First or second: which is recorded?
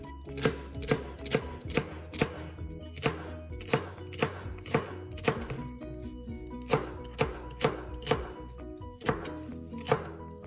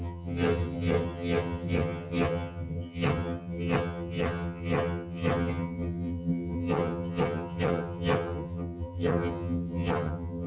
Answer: first